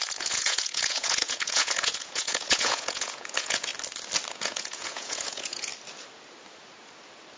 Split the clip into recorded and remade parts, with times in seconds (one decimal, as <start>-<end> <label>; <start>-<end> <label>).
0.0-3.7 remade; 3.7-4.3 recorded; 4.3-5.7 remade; 5.7-7.4 recorded